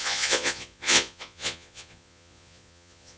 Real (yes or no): no